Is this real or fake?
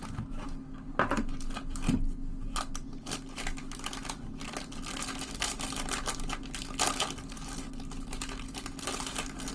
real